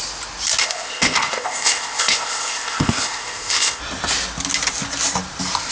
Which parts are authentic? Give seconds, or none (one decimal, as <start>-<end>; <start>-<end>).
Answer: 0.0-0.6; 3.8-5.7